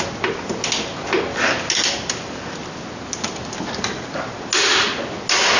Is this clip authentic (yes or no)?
yes